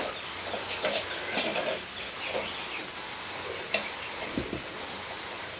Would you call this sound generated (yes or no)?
no